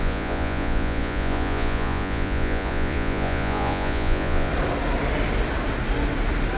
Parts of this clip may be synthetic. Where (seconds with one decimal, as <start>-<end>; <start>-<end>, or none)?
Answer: 0.0-4.5